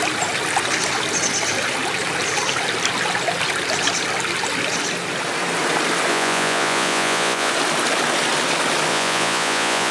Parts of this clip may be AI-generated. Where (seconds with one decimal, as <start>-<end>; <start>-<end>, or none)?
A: 6.1-7.5; 8.9-9.9